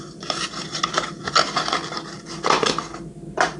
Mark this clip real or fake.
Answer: real